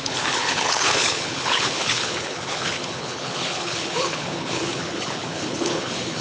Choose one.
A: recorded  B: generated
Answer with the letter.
B